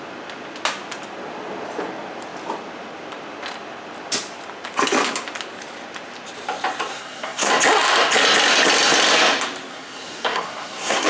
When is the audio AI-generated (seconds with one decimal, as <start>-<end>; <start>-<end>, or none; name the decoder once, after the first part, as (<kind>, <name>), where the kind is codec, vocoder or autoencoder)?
6.9-7.5 (codec, SNAC); 9.7-11.1